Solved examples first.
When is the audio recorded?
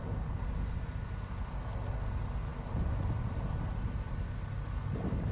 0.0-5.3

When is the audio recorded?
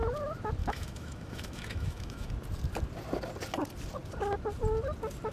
0.0-0.6; 2.3-5.3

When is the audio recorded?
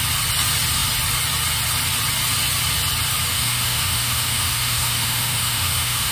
0.0-3.3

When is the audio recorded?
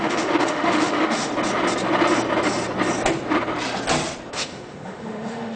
1.3-4.3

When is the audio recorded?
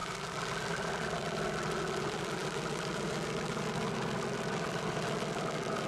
0.0-5.9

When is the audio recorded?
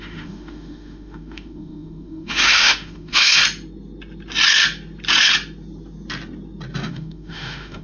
3.4-6.9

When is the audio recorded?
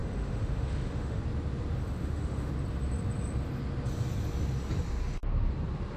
1.2-1.8; 2.5-6.0